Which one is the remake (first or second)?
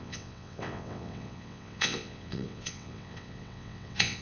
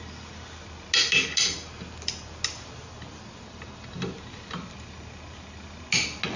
first